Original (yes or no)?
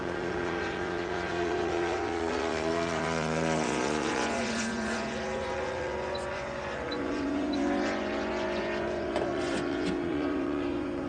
no